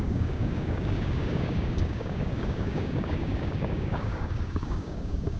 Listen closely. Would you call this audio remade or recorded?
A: remade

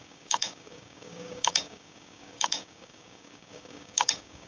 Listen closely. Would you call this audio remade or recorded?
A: remade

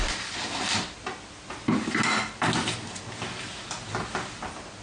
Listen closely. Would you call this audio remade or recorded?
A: recorded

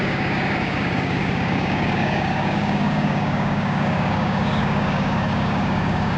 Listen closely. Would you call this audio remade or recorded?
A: remade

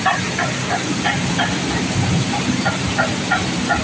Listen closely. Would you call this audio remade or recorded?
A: recorded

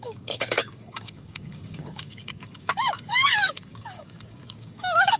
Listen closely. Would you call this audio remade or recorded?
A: remade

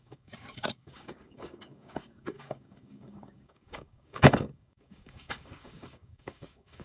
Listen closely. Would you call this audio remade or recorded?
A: remade